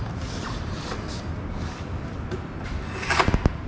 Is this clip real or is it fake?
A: real